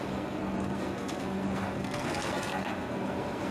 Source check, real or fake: fake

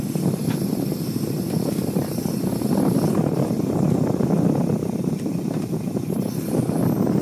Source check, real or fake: real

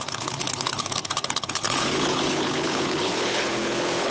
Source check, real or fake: fake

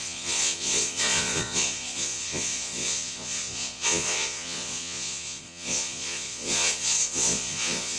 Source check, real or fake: fake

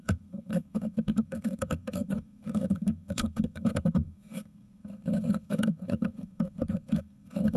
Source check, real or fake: fake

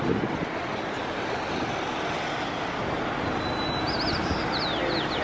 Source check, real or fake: real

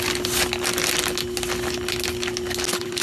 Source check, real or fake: real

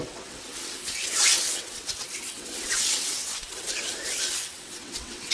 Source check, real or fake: fake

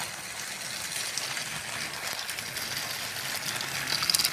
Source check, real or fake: real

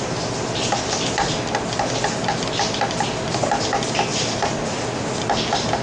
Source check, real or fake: real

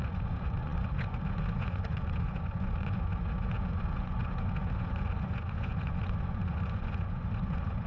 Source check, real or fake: fake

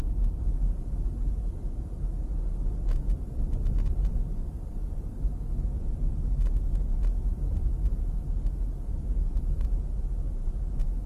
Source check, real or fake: real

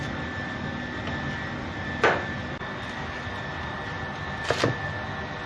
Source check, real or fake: real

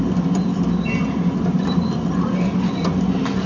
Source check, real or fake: real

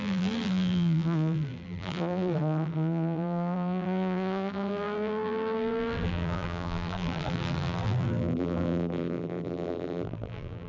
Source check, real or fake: fake